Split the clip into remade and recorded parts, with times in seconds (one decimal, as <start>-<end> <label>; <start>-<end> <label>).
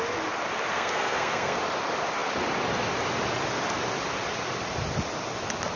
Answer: 0.0-0.7 recorded; 0.7-1.6 remade; 1.6-5.8 recorded